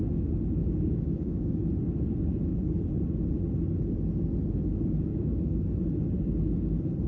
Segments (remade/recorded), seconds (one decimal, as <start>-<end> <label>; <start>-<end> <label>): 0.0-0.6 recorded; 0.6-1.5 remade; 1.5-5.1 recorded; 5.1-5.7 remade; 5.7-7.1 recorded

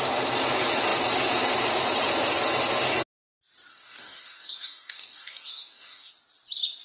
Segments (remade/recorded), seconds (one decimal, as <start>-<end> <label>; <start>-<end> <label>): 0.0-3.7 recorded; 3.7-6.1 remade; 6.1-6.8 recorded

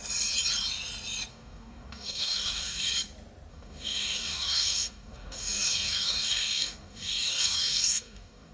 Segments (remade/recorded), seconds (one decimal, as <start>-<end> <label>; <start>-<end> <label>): 0.0-1.3 recorded; 1.3-2.9 remade; 2.9-3.5 recorded; 3.5-8.5 remade